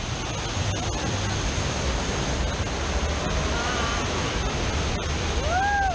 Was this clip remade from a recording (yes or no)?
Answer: no